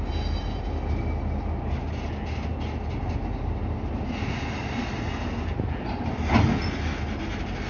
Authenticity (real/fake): real